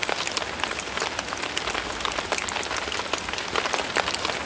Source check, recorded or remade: recorded